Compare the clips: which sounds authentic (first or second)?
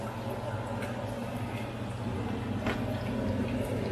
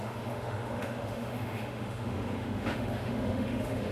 first